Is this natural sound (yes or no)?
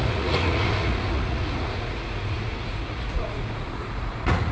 no